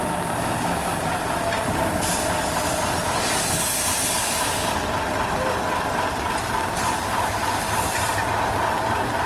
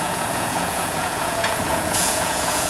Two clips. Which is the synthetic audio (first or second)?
second